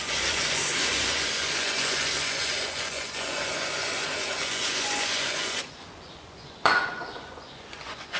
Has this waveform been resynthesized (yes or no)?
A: yes